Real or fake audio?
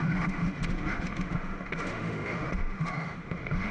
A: fake